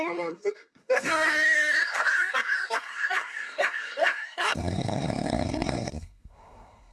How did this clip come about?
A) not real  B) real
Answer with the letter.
A